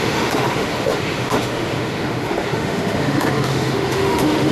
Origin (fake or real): fake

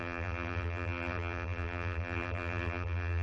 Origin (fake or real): fake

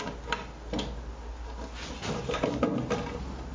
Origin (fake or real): real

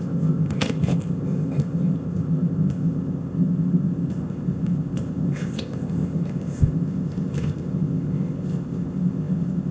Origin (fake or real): fake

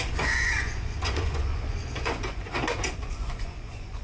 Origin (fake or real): fake